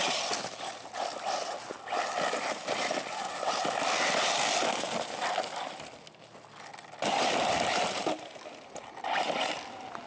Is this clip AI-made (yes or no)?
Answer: no